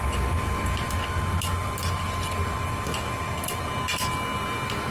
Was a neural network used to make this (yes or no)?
no